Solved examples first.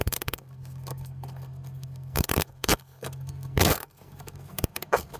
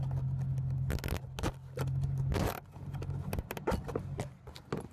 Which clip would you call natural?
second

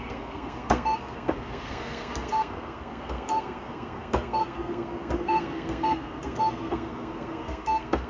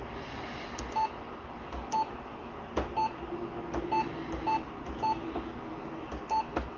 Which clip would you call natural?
second